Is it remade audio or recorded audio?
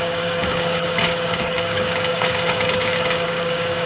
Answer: remade